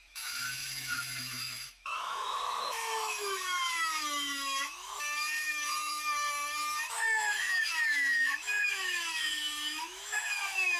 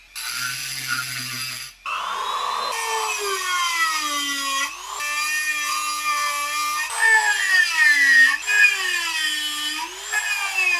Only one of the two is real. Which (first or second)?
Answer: second